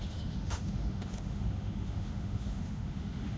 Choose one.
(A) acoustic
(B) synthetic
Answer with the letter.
B